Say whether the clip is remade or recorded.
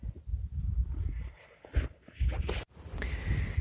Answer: recorded